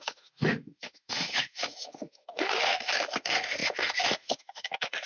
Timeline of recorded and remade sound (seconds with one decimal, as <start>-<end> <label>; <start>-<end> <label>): 0.0-5.1 remade